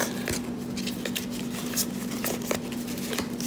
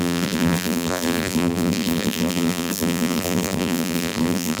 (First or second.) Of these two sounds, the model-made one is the second